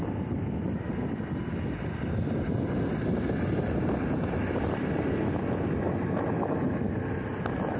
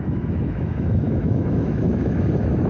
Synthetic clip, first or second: second